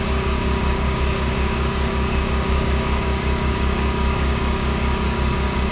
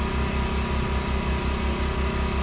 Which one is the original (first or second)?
second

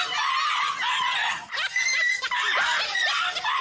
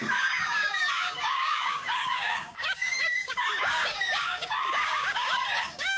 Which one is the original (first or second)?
first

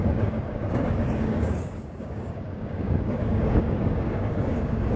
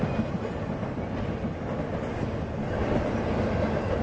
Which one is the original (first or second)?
second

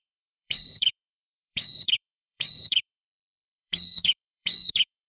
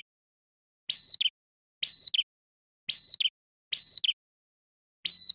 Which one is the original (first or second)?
second